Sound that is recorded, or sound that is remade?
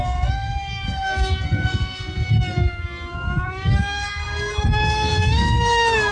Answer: remade